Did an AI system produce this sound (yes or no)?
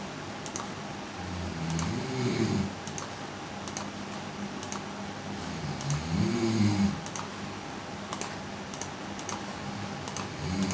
no